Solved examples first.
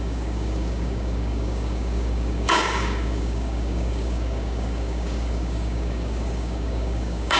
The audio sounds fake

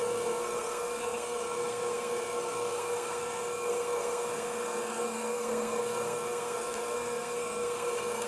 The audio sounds fake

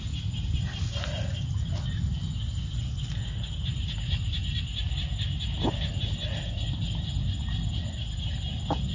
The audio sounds real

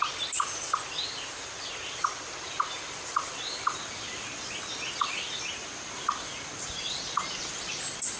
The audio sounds real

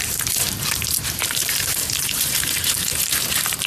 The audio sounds fake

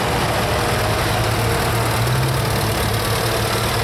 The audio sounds real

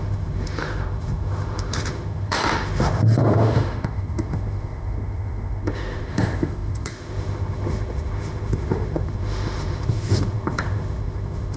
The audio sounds fake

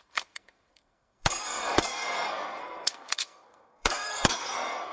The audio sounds fake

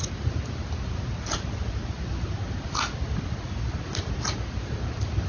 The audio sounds real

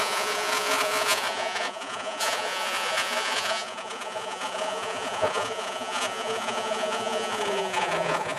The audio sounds fake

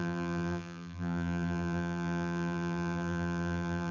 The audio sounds fake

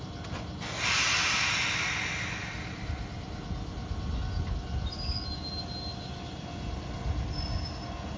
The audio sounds real